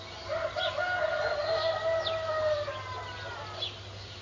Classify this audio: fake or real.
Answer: real